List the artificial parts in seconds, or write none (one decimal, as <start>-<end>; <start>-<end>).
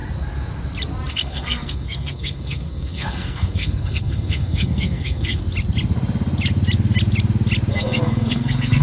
1.1-5.4; 7.7-8.8